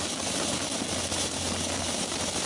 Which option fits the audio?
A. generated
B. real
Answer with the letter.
B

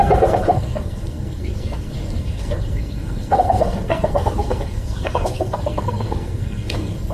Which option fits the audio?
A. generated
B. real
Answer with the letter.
A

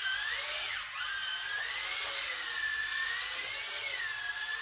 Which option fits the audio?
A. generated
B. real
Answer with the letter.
B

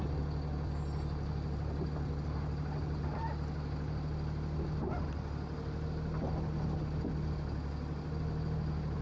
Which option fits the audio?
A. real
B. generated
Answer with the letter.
A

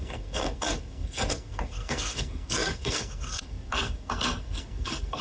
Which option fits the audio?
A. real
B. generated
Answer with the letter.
B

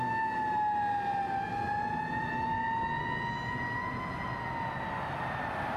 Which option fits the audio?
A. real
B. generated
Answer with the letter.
A